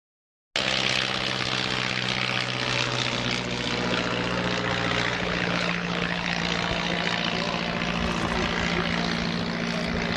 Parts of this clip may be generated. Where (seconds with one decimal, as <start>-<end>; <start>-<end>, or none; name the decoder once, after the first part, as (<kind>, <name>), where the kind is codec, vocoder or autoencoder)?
5.1-6.4 (codec, HILCodec)